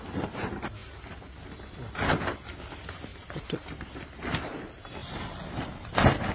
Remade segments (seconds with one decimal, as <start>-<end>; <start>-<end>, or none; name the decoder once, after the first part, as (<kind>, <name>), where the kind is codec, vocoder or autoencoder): 5.0-6.3 (vocoder, BigVGAN v2)